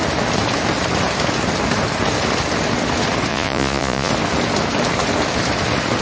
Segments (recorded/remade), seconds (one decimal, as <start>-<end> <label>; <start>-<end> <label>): 0.0-3.3 recorded; 3.3-4.1 remade; 4.1-6.0 recorded